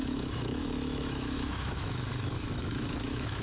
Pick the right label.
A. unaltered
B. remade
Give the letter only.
B